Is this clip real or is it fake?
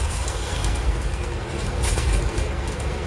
fake